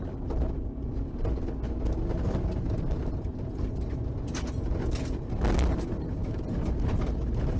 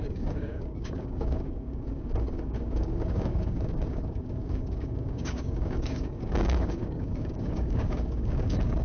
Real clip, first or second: first